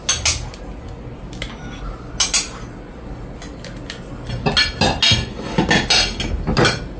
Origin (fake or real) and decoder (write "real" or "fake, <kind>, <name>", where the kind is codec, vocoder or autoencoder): real